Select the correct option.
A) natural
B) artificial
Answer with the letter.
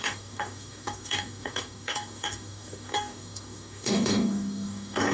B